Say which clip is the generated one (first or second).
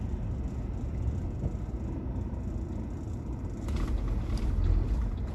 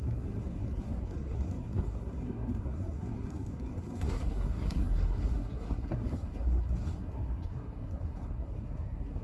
second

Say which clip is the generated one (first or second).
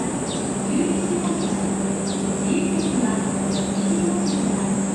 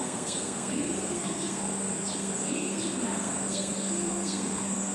second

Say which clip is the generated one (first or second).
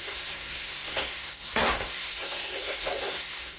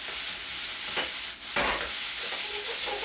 first